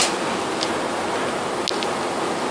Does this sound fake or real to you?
real